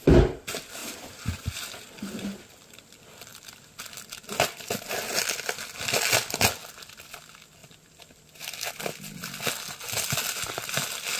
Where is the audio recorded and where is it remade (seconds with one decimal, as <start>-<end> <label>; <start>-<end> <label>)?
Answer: 0.0-0.8 recorded; 0.8-1.5 remade; 1.5-11.2 recorded